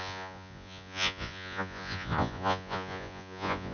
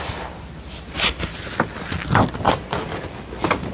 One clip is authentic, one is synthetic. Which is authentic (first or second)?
second